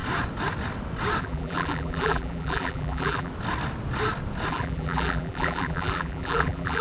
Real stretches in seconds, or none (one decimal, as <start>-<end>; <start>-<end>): 0.0-1.2; 3.3-4.5